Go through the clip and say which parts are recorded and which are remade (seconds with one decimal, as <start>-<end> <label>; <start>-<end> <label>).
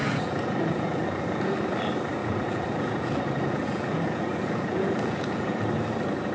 0.0-1.5 remade; 1.5-2.2 recorded; 2.2-5.6 remade; 5.6-6.3 recorded